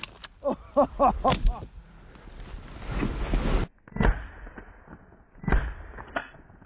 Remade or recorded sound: recorded